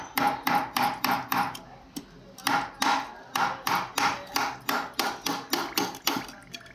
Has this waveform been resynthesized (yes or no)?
no